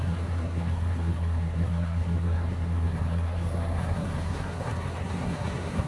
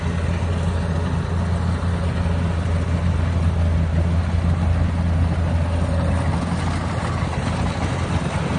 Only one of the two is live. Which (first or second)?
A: second